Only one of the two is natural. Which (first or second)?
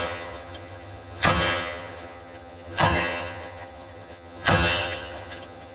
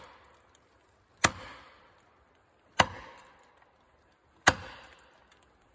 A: second